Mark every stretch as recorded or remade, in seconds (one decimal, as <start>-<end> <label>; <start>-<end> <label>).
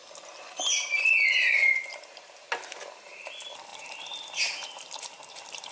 0.0-1.9 recorded; 1.9-2.5 remade; 2.5-3.7 recorded; 3.7-5.7 remade